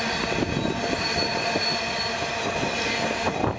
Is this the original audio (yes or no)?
yes